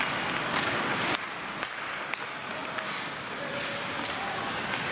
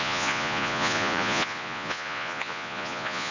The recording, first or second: first